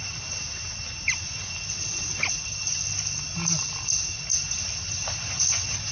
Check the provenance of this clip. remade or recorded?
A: recorded